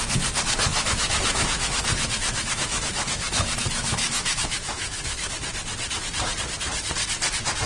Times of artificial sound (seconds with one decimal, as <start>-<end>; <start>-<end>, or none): 0.7-5.3